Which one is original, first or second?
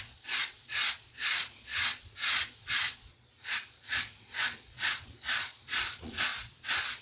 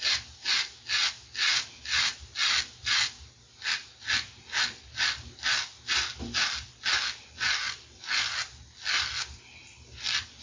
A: second